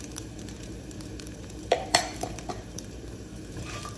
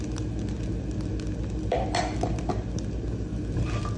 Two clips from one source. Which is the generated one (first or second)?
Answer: first